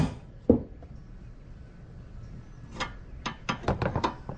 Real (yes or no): yes